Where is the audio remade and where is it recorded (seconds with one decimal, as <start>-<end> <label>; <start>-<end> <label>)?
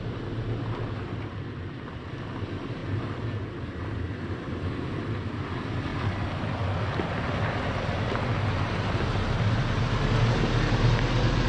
0.0-11.5 recorded